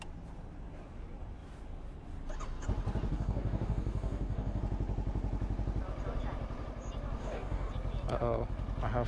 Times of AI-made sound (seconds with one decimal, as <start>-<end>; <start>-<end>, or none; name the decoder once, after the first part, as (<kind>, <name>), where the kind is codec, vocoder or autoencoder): 3.1-4.6 (codec, DAC); 7.2-7.7